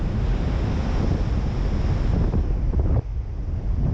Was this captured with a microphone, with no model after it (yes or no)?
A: yes